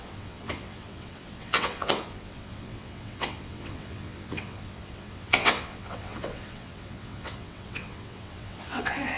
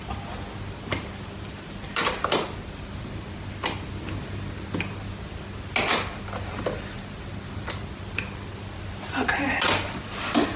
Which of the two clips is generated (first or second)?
first